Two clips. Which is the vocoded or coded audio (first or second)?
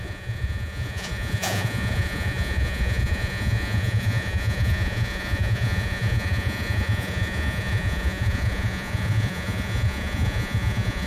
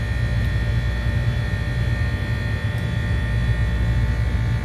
first